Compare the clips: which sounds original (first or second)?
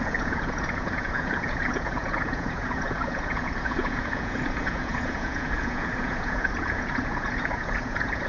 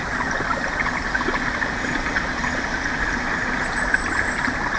second